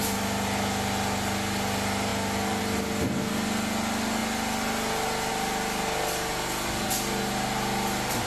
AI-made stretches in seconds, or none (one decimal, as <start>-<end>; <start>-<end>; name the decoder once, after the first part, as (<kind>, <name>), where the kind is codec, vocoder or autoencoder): none